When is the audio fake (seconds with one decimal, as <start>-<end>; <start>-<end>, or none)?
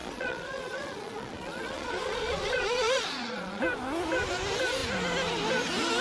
0.0-3.6